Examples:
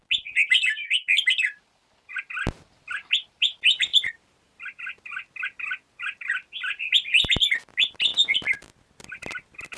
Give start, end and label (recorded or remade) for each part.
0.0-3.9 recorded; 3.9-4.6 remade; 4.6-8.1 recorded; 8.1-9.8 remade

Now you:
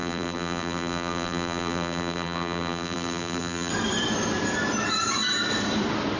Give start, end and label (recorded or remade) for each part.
0.0-3.7 remade; 3.7-6.2 recorded

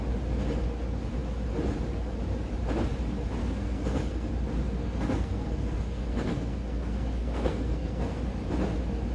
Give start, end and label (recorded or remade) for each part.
0.0-3.4 recorded; 3.4-4.3 remade; 4.3-4.8 recorded; 4.8-8.2 remade; 8.2-9.1 recorded

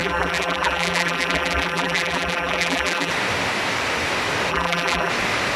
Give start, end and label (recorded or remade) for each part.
0.0-3.1 remade; 3.1-4.5 recorded; 4.5-5.1 remade; 5.1-5.6 recorded

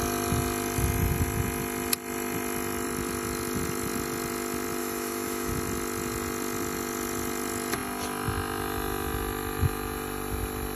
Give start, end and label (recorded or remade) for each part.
0.0-4.8 recorded; 4.8-5.5 remade; 5.5-10.8 recorded